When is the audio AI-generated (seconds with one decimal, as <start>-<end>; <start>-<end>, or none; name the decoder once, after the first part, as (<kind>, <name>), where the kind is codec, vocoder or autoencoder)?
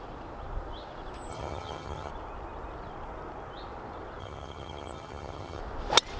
1.3-2.1 (vocoder, HiFi-GAN); 4.2-5.6